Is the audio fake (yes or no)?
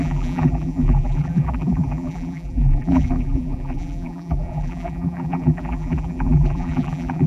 yes